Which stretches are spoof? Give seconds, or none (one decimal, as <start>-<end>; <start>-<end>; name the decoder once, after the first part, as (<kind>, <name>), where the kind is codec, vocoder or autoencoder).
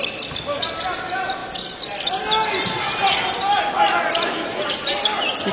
none